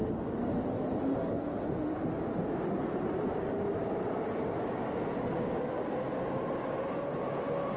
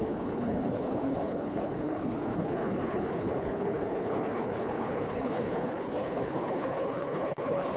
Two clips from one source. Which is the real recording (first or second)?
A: first